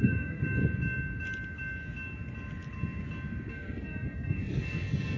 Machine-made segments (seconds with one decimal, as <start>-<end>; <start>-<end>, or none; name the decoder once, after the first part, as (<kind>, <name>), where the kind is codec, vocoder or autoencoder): 0.0-0.4 (codec, SNAC); 3.5-5.2